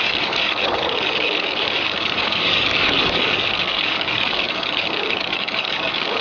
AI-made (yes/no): yes